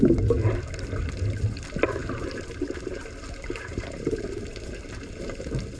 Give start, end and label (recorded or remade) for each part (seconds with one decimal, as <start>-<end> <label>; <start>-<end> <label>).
0.0-2.0 recorded; 2.0-5.8 remade